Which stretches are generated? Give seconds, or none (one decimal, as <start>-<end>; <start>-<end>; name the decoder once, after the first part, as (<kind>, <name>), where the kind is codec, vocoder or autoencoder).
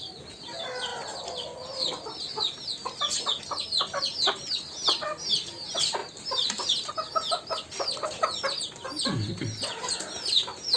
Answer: none